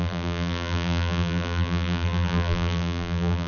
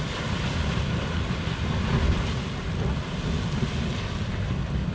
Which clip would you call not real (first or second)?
first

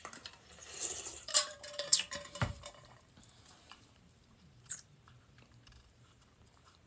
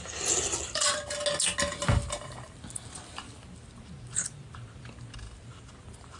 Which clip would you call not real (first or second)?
first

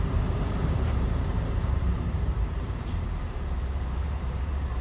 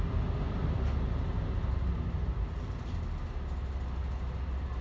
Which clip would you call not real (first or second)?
first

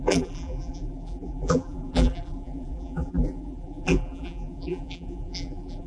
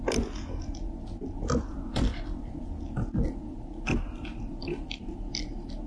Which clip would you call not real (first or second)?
first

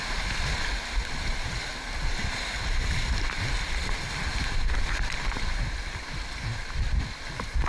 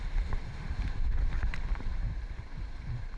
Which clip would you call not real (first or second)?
second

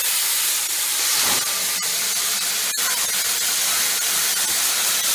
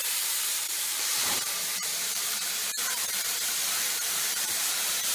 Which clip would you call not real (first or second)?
second